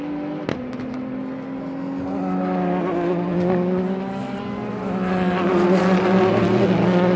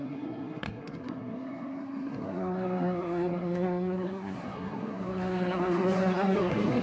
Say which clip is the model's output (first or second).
second